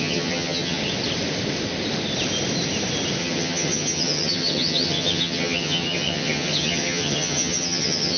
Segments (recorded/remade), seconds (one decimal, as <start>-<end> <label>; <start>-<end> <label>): 0.0-0.8 remade; 0.8-3.2 recorded; 3.2-8.2 remade